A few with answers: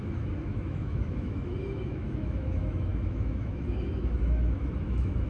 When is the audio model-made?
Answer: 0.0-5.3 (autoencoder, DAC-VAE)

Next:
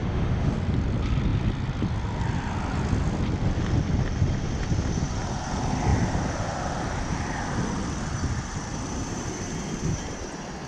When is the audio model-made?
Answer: 0.0-0.5 (autoencoder, DAC-VAE)